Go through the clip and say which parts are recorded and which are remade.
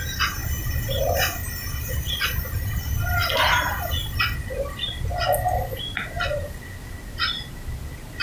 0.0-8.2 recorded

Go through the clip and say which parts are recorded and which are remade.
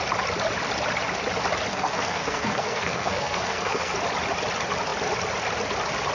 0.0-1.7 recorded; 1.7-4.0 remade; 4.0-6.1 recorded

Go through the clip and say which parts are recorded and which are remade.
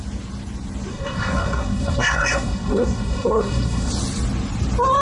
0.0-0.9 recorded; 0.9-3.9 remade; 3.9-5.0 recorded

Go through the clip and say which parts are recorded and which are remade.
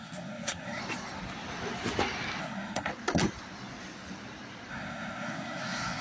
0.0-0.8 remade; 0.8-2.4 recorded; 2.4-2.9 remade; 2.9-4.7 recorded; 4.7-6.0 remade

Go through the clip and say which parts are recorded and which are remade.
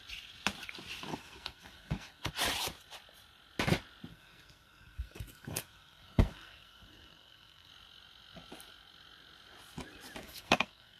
0.0-1.1 recorded; 1.1-2.3 remade; 2.3-4.1 recorded; 4.1-7.7 remade; 7.7-10.2 recorded; 10.2-11.0 remade